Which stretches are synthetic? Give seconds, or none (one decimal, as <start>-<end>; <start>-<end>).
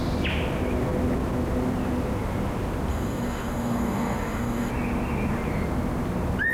2.9-4.7